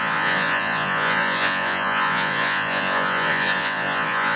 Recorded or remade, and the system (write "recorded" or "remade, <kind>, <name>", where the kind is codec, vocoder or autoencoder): remade, vocoder, Vocos